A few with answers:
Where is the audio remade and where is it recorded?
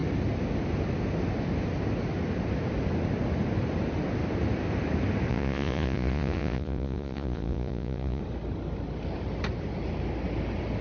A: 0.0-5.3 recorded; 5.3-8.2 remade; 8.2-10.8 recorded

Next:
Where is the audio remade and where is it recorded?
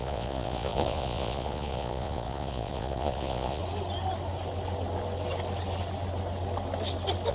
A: 0.0-3.6 remade; 3.6-7.3 recorded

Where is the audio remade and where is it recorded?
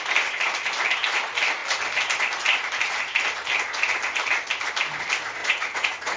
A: 0.0-5.4 recorded; 5.4-6.2 remade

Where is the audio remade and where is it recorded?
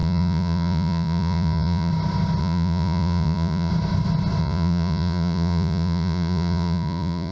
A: 0.0-1.9 remade; 1.9-2.4 recorded; 2.4-3.7 remade; 3.7-4.4 recorded; 4.4-7.3 remade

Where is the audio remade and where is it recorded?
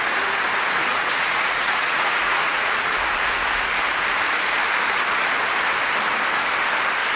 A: 0.0-0.9 recorded; 0.9-2.9 remade; 2.9-7.2 recorded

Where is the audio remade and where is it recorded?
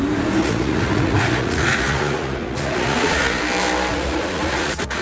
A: 0.0-0.4 recorded; 0.4-3.4 remade; 3.4-3.9 recorded; 3.9-5.0 remade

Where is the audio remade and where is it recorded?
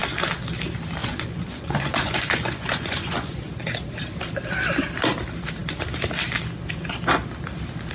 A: 0.0-1.0 recorded; 1.0-3.5 remade; 3.5-7.9 recorded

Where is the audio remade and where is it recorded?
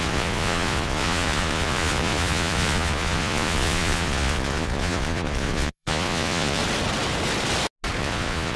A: 0.0-6.6 remade; 6.6-8.0 recorded; 8.0-8.6 remade